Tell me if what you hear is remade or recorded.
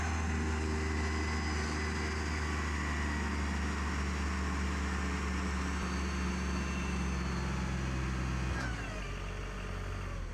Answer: recorded